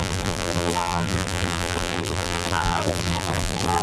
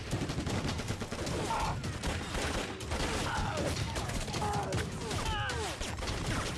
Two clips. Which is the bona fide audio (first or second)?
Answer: second